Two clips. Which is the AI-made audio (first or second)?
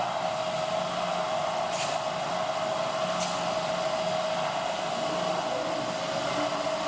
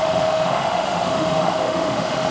second